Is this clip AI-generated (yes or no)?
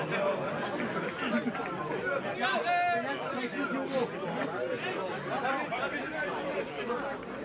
no